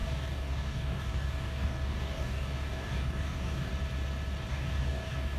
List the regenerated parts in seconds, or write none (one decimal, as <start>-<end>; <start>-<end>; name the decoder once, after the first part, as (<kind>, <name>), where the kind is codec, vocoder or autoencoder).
0.0-3.7 (codec, DAC); 4.5-5.4